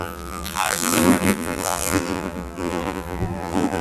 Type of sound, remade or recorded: remade